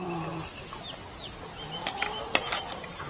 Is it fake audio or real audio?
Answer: real